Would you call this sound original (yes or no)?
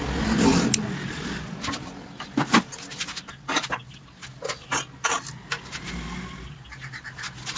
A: yes